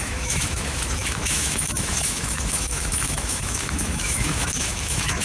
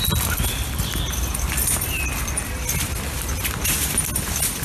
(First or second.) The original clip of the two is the second